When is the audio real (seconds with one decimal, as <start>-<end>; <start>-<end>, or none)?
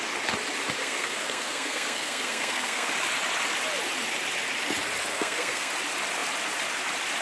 0.0-0.8; 2.9-5.1; 5.7-7.2